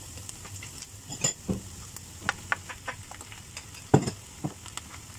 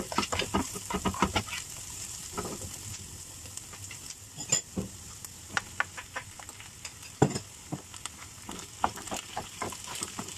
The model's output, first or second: first